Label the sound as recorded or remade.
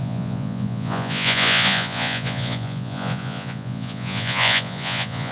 remade